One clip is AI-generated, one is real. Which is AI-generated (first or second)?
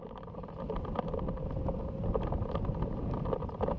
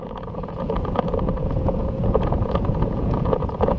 second